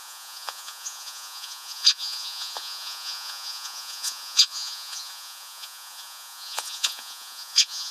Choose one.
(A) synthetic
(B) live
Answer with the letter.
A